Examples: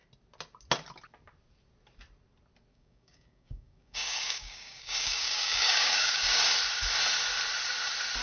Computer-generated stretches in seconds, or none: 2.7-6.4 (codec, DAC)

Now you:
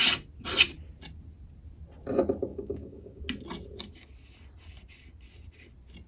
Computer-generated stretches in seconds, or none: 2.5-3.2 (codec, DAC)

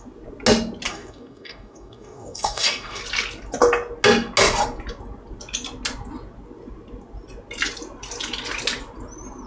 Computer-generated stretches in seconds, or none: 0.9-3.0 (codec, DAC)

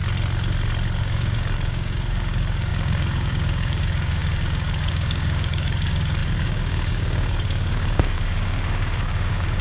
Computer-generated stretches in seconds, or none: 1.0-9.6 (codec, DAC)

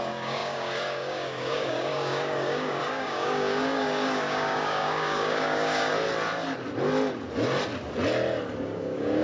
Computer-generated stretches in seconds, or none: 0.0-5.9 (codec, DAC); 8.6-9.2

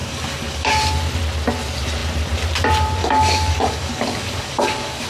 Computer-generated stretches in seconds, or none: 0.0-0.7 (codec, DAC); 3.0-5.1

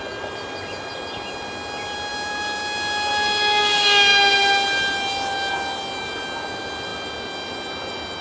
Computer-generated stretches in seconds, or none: none

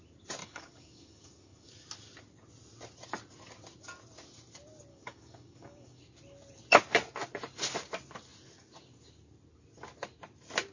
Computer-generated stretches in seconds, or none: 0.4-1.7 (codec, DAC); 4.9-6.0